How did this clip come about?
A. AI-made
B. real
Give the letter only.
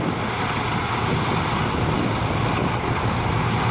B